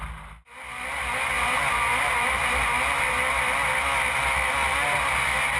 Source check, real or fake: real